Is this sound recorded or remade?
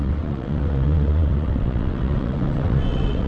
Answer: remade